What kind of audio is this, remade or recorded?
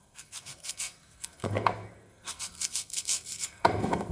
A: remade